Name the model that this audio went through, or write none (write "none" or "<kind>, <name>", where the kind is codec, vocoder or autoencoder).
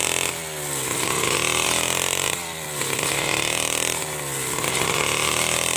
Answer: none